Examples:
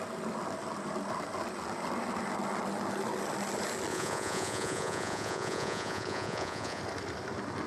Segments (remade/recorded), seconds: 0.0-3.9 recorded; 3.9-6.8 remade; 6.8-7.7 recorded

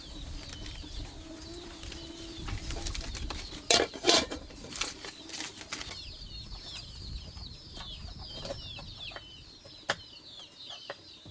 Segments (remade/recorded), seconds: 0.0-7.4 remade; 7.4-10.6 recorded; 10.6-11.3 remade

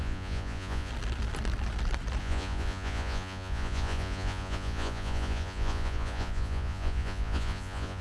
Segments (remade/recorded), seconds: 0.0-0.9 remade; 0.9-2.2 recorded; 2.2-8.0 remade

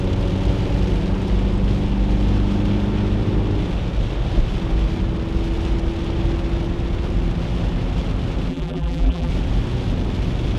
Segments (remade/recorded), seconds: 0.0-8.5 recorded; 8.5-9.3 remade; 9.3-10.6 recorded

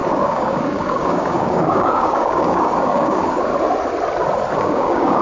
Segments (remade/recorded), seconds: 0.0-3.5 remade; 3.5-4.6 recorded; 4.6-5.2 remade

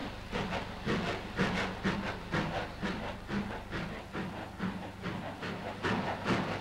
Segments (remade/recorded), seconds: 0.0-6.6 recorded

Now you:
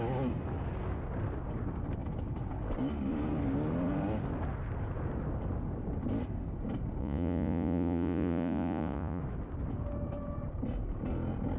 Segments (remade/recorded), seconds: 0.0-7.0 recorded; 7.0-9.2 remade; 9.2-11.6 recorded

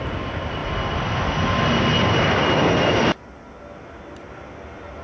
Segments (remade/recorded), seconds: 0.0-5.0 recorded